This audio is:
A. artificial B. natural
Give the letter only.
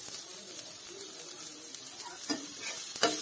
B